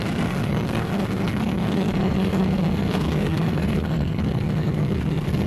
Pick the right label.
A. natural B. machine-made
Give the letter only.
B